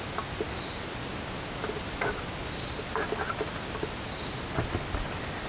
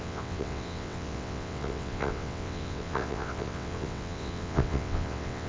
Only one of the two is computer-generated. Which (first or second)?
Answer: second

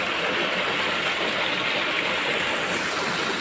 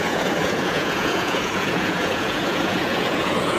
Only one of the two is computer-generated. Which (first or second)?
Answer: second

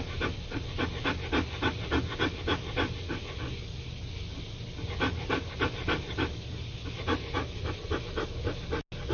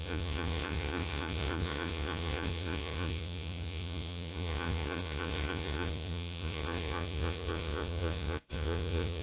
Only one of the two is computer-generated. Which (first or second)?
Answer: second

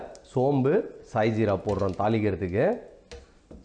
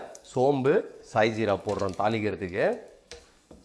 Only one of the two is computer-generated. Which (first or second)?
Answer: second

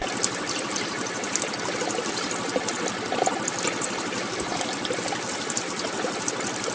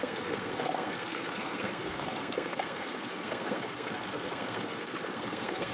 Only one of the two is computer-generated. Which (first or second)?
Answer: second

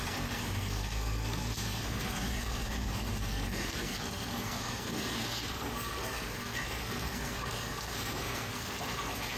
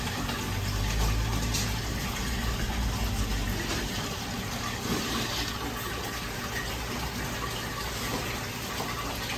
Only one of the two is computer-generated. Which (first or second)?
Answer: first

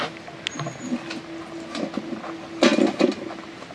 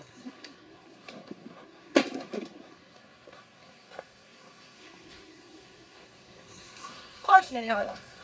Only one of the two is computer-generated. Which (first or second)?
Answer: second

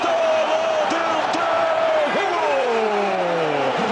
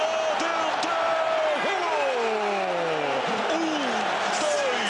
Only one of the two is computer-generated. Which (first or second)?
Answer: first